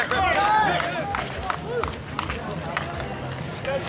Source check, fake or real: real